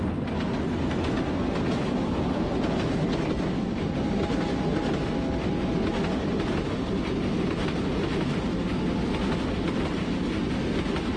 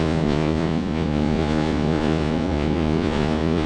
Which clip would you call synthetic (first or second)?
second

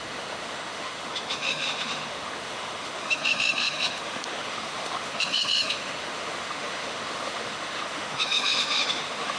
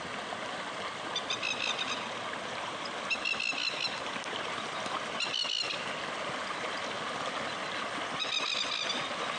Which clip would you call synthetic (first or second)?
first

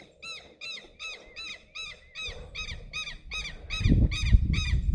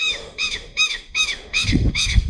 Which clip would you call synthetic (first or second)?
second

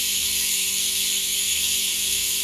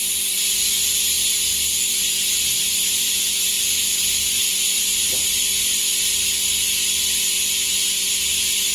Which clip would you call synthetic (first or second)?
first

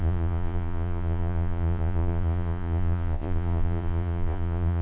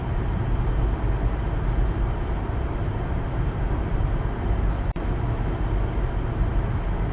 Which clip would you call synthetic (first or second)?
first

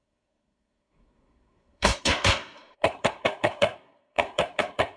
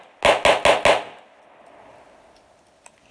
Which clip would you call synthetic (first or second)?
first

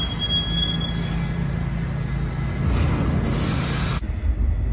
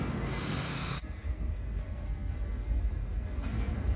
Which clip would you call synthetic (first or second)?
second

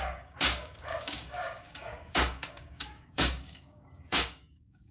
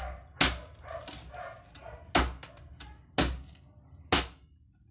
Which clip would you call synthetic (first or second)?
first